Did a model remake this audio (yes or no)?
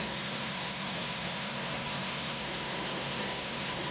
yes